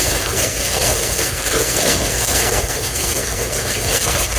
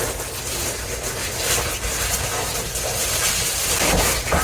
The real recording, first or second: second